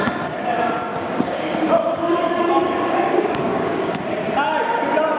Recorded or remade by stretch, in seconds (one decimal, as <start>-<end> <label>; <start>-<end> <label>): 0.0-0.9 recorded; 0.9-4.0 remade; 4.0-5.2 recorded